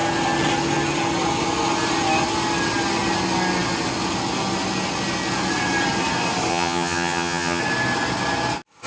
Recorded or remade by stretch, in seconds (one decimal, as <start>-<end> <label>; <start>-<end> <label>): 0.0-6.5 recorded; 6.5-7.6 remade; 7.6-8.9 recorded